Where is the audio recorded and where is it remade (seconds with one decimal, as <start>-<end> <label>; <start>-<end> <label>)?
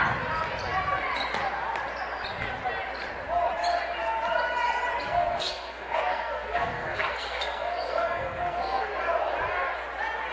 0.0-5.0 recorded; 5.0-8.9 remade; 8.9-10.3 recorded